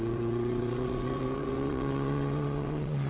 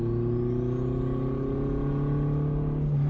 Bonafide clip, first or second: second